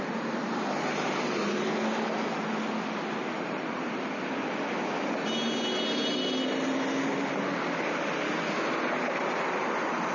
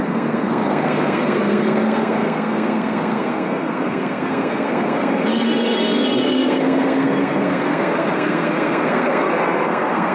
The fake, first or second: second